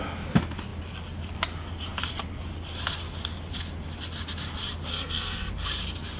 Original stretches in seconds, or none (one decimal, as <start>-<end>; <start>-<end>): 0.0-4.9; 5.5-6.2